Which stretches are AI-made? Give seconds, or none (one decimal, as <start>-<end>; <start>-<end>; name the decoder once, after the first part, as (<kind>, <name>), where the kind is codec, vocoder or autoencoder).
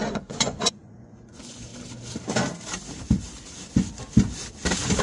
0.0-1.7 (vocoder, Vocos)